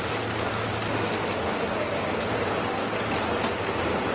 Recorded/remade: recorded